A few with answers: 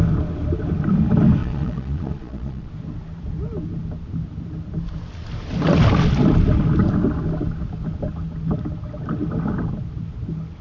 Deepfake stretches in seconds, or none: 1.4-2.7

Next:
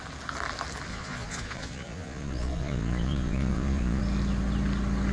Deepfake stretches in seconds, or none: 0.9-4.0

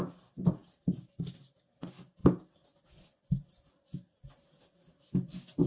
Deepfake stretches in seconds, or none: none

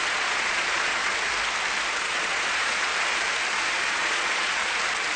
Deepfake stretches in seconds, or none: 0.0-1.1; 2.0-2.9; 3.9-4.6

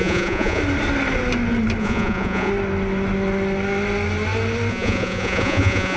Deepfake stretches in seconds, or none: 0.0-0.6; 1.8-2.5; 4.7-6.0